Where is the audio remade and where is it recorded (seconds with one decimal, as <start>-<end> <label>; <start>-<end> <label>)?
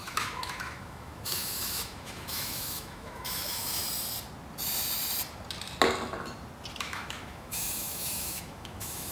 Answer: 0.0-3.8 remade; 3.8-6.8 recorded; 6.8-9.1 remade